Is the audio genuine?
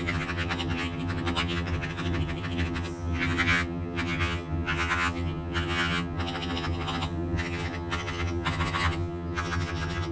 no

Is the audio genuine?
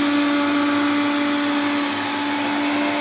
yes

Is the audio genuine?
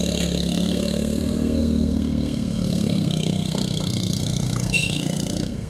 no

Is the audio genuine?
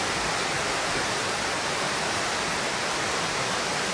no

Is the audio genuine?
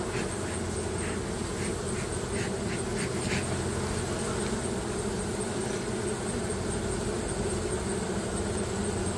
yes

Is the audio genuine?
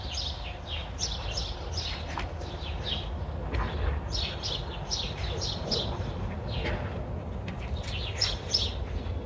yes